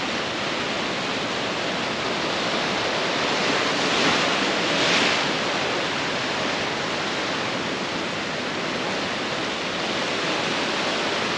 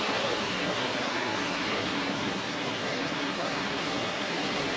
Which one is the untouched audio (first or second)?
first